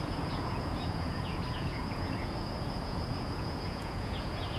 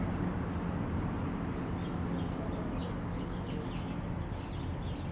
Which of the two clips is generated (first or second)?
first